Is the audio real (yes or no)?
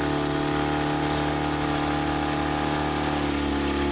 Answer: yes